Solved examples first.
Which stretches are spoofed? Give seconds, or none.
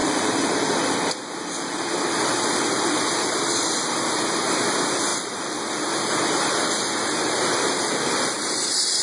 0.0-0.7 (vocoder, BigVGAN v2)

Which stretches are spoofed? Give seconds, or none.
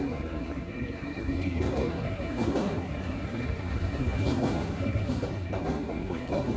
0.0-6.6 (codec, SNAC)